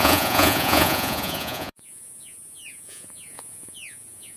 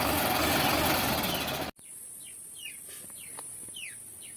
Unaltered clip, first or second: second